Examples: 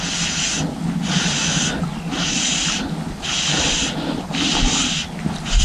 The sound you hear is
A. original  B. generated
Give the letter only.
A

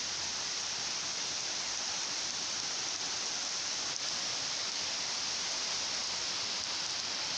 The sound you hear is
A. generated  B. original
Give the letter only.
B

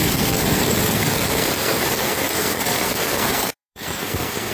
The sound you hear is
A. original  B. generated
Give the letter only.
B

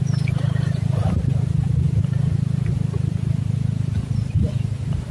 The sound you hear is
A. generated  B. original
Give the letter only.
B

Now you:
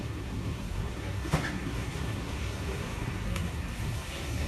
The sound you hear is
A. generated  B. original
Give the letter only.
A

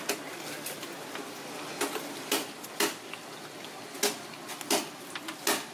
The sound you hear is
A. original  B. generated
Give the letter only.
A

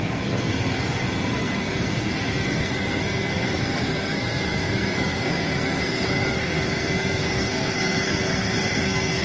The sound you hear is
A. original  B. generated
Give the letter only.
B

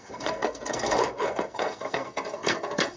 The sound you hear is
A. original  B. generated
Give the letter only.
B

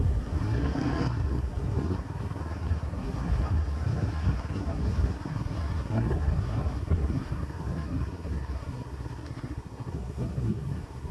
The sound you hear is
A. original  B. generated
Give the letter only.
B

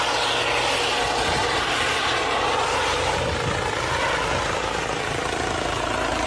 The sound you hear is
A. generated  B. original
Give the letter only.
B